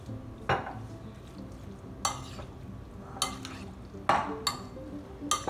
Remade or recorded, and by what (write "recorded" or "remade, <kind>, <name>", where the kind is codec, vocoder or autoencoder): recorded